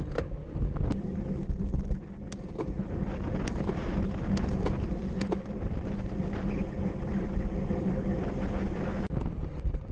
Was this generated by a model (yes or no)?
no